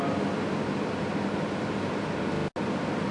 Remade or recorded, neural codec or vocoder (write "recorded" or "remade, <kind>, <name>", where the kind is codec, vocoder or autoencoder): recorded